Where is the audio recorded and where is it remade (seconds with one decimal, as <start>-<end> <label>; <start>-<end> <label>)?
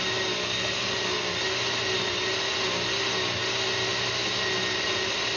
0.0-5.4 recorded